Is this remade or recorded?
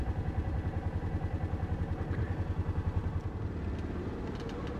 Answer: recorded